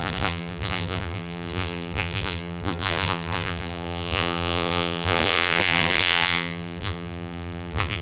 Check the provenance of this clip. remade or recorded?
remade